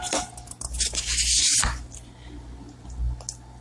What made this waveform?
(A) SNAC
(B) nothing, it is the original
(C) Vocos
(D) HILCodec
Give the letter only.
B